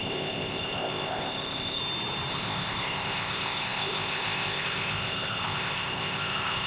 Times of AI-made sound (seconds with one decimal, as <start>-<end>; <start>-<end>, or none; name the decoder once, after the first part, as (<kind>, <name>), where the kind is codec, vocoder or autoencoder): 0.0-1.8 (codec, ZipCodec); 2.3-6.7